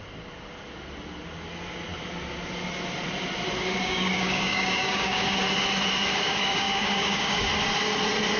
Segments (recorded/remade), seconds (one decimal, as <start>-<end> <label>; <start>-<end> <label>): 0.0-3.8 recorded; 3.8-5.4 remade; 5.4-6.1 recorded; 6.1-7.5 remade; 7.5-8.4 recorded